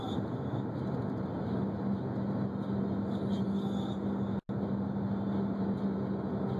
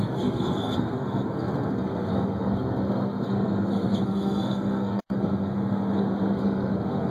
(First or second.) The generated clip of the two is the second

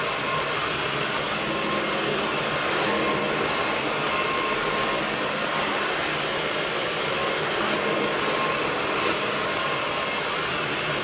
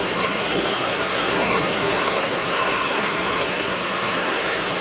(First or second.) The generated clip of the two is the second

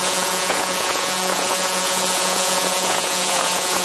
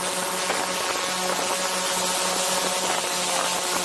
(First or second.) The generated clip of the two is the first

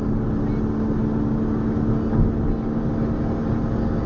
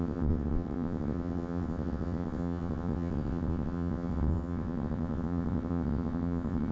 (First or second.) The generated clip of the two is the second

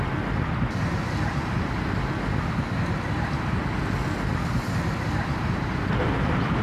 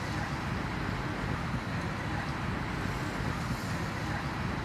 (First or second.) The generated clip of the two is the first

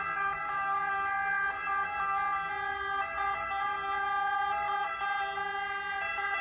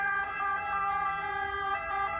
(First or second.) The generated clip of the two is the second